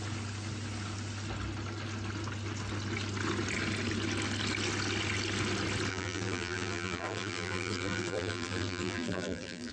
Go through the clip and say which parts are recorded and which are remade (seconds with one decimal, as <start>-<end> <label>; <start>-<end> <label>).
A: 0.0-5.9 recorded; 5.9-9.7 remade